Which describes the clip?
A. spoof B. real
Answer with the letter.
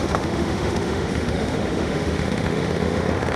A